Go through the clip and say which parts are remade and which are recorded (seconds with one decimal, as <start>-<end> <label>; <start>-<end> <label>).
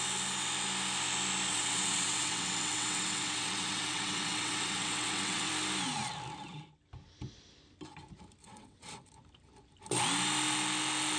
0.0-1.5 recorded; 1.5-5.5 remade; 5.5-8.4 recorded; 8.4-9.1 remade; 9.1-11.2 recorded